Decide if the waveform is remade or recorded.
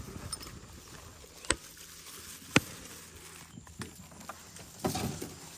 recorded